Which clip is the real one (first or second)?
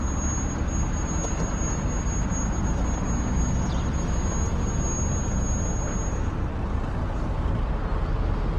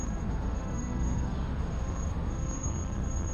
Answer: first